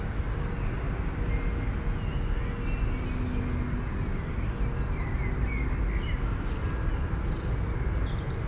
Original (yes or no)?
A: yes